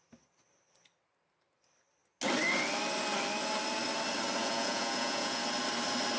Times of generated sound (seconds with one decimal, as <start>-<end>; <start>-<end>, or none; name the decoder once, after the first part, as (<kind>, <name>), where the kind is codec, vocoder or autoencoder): 4.4-5.4 (vocoder, Vocos)